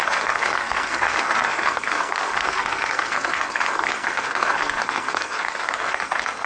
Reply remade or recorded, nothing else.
remade